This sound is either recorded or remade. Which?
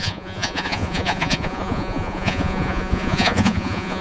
remade